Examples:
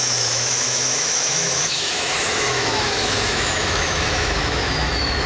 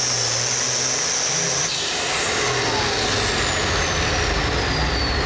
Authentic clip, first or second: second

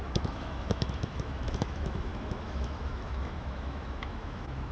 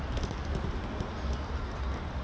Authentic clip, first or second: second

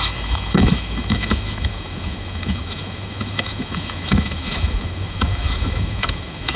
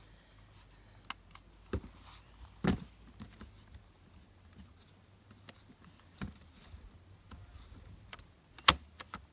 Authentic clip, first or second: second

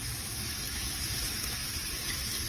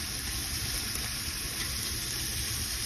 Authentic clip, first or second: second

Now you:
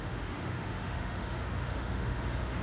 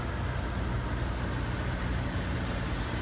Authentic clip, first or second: second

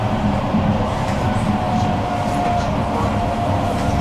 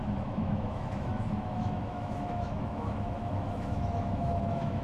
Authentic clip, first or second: first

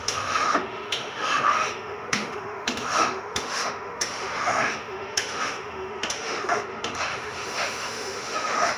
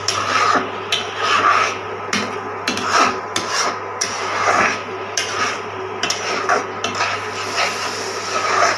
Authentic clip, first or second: second